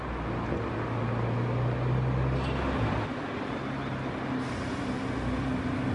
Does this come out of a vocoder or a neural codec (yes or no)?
no